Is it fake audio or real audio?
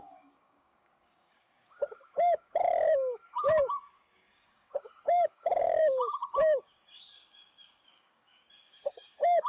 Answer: fake